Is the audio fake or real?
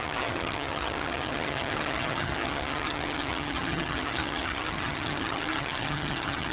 fake